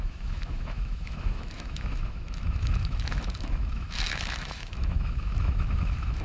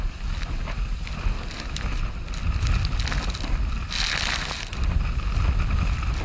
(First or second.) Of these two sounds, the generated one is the first